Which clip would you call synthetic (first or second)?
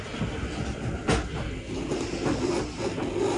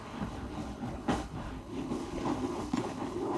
second